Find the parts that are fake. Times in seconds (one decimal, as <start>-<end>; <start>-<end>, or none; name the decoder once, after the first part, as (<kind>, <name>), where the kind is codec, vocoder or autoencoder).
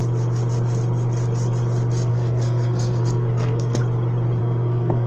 2.1-3.8 (codec, SNAC); 4.4-5.1